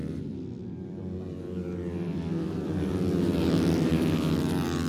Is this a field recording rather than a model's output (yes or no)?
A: no